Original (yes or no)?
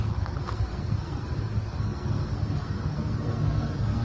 no